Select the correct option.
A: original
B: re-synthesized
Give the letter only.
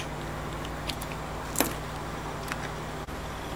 A